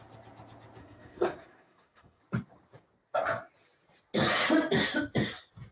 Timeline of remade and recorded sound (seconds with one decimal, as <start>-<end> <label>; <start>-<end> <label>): 0.0-0.8 recorded; 0.8-2.2 remade; 2.2-5.7 recorded